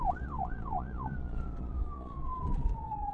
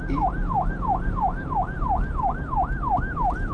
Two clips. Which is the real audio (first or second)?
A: second